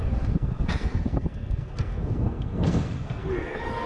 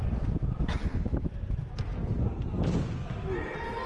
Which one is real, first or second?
second